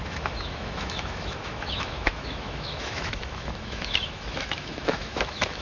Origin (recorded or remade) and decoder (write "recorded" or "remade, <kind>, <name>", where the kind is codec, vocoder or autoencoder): remade, autoencoder, DAC-VAE